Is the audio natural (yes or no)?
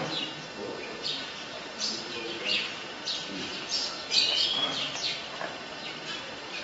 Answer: yes